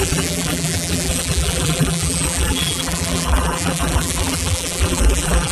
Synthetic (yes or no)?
yes